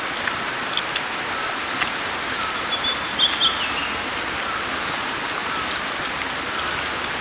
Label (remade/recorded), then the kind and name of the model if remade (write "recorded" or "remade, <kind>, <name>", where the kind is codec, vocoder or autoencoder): recorded